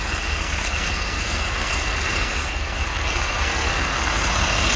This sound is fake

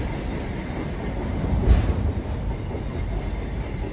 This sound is real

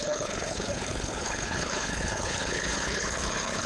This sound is fake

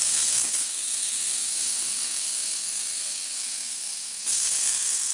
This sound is fake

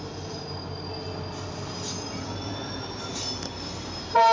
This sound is real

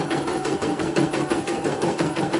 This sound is fake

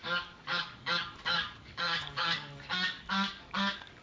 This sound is fake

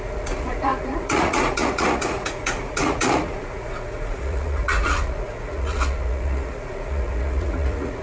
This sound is fake